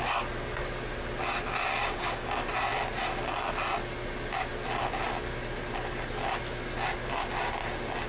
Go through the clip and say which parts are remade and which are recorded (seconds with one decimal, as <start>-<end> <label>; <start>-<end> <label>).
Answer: 0.0-1.8 recorded; 1.8-2.3 remade; 2.3-8.1 recorded